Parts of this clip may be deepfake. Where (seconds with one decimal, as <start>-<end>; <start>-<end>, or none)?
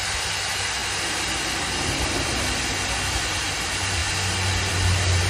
none